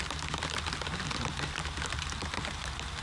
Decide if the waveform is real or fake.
real